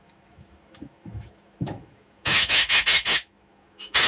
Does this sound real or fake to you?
fake